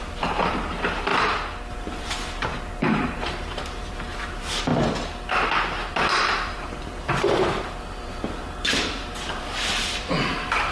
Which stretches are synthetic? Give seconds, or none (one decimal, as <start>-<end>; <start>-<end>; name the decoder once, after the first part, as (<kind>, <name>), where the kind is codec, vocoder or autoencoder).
0.0-1.1 (vocoder, BigVGAN v2); 1.7-4.7; 5.9-10.7

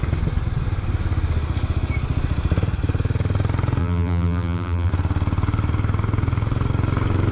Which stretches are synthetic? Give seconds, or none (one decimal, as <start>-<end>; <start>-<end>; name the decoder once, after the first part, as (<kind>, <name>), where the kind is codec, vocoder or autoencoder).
3.8-4.9 (vocoder, BigVGAN v2)

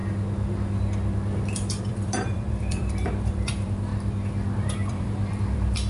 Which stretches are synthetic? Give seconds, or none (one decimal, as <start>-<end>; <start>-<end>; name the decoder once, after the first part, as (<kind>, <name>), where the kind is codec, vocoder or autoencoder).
1.8-3.9 (vocoder, BigVGAN v2); 4.6-5.9

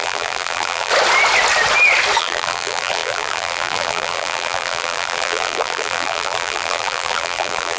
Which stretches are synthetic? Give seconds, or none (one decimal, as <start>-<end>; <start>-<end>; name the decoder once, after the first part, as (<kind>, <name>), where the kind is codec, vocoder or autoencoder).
0.0-0.9 (vocoder, BigVGAN v2); 2.2-7.8